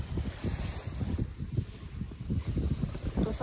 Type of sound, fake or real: real